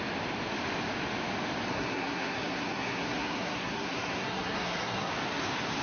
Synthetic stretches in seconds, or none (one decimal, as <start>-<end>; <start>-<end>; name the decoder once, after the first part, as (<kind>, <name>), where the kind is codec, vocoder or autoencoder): 1.7-5.1 (codec, SNAC)